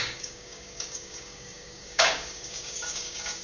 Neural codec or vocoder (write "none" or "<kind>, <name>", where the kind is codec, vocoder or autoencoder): codec, DAC